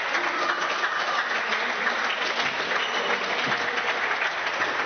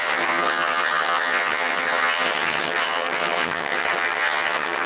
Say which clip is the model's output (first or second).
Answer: second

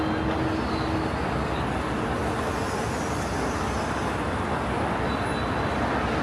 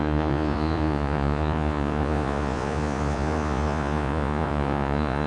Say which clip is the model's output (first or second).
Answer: second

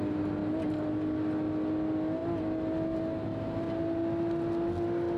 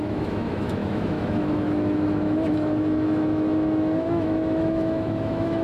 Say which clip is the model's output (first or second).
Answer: second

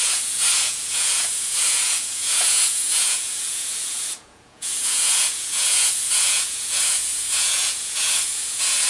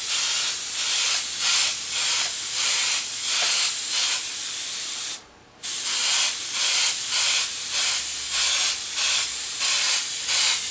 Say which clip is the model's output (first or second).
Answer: first